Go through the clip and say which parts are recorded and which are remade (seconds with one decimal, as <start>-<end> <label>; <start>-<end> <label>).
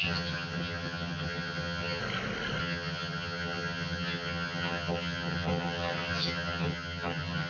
0.0-2.0 remade; 2.0-2.6 recorded; 2.6-7.5 remade